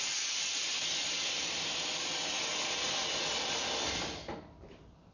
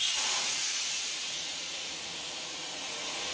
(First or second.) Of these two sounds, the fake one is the second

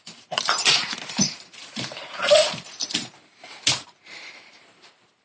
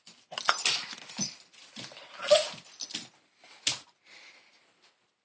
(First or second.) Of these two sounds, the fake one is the first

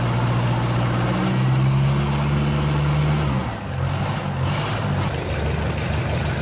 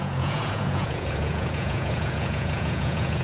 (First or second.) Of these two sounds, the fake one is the second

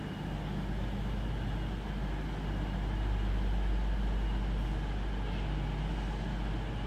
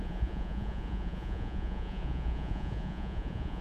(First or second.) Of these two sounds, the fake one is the second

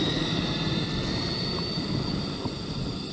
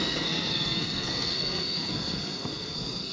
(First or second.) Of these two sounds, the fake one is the second